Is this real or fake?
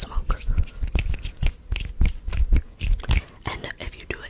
real